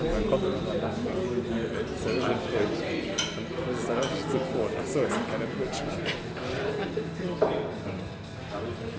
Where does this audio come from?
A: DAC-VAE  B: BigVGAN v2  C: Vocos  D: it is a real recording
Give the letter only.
D